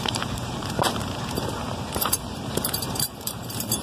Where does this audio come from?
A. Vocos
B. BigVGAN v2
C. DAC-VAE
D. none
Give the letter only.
B